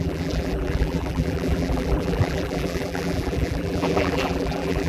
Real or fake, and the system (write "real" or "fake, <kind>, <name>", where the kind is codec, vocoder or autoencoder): fake, vocoder, BigVGAN v2